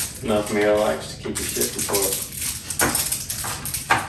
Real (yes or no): yes